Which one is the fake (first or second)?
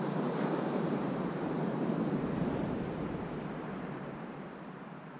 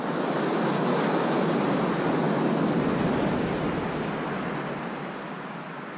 first